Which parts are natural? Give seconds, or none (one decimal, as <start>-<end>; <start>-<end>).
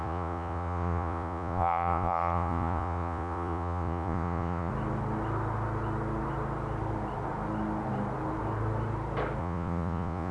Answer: 4.7-9.4